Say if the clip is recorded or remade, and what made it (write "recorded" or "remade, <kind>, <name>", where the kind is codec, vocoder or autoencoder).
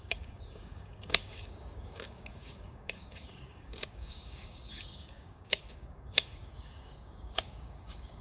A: remade, codec, DAC